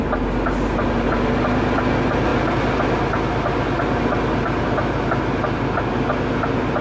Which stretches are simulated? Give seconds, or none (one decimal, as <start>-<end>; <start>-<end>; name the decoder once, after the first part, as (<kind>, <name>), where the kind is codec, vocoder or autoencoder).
none